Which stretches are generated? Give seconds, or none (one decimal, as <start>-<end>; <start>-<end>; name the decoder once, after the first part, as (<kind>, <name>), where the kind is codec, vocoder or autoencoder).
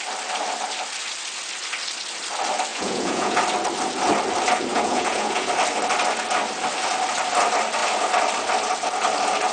2.7-3.4 (vocoder, Vocos); 4.7-5.5